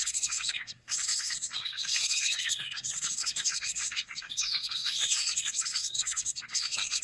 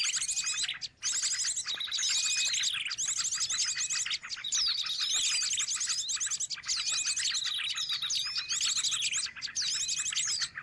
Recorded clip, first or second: second